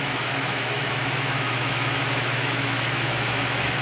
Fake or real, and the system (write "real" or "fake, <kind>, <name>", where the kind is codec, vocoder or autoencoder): fake, autoencoder, DAC-VAE